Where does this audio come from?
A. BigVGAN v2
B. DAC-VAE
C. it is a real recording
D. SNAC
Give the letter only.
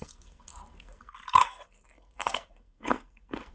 D